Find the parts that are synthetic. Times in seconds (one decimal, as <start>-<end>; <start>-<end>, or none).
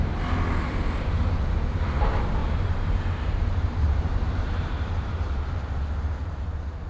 2.4-5.5; 6.2-6.9